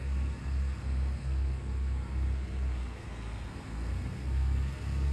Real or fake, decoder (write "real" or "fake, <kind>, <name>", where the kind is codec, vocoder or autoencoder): fake, codec, SNAC